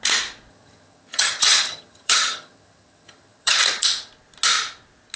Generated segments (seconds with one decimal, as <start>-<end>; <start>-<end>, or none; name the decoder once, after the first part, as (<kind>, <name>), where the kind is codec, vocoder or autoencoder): 0.5-3.6 (vocoder, HiFi-GAN)